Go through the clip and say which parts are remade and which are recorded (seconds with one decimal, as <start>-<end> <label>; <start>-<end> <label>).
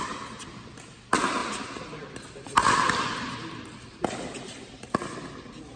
0.0-5.8 recorded